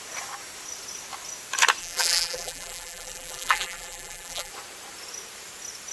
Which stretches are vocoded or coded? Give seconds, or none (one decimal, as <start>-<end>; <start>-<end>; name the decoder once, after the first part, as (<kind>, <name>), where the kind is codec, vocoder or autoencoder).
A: 1.8-4.5 (vocoder, BigVGAN v2)